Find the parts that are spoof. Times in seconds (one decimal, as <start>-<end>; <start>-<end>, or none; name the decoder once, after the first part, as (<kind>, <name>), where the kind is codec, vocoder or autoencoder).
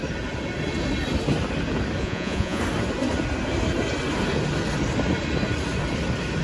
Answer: 2.0-2.6 (vocoder, Vocos)